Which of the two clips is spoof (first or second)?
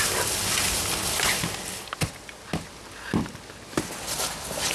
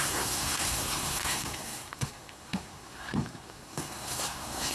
second